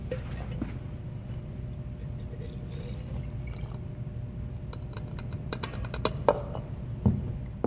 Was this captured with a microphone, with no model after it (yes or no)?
yes